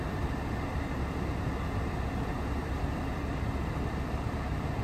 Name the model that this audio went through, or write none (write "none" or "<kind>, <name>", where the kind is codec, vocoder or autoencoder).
none